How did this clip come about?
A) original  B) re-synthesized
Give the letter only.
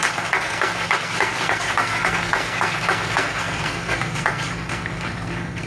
B